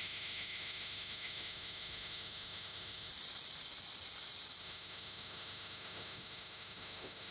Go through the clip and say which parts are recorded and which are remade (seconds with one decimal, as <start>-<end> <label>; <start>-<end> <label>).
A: 0.0-3.1 remade; 3.1-4.6 recorded; 4.6-7.3 remade